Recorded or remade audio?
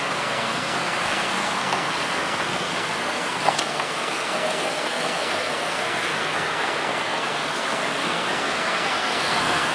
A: remade